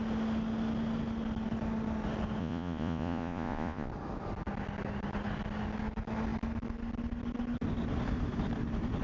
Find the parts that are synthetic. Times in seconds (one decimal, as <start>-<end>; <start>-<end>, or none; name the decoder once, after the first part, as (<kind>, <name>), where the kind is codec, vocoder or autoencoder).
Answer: 2.4-3.9 (vocoder, Vocos)